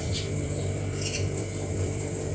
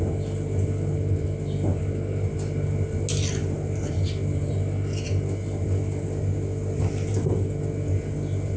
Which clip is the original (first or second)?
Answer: second